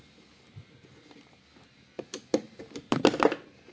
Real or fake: real